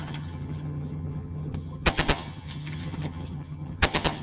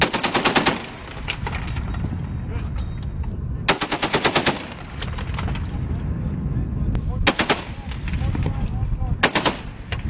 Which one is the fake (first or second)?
first